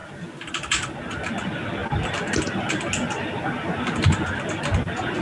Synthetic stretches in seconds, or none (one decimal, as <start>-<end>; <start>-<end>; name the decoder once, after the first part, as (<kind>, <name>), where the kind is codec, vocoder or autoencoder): none